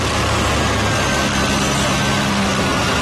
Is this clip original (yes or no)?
yes